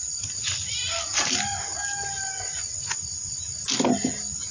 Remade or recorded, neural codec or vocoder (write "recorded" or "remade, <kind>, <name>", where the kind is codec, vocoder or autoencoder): recorded